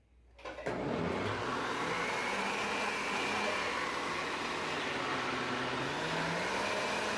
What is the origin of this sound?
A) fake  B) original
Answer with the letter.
B